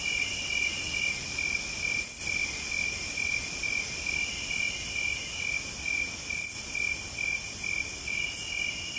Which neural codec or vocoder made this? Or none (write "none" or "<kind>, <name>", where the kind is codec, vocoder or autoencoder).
none